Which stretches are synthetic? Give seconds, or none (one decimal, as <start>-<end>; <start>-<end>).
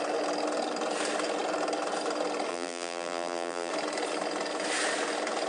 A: 2.5-3.7